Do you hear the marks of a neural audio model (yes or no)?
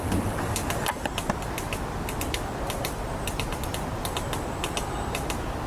no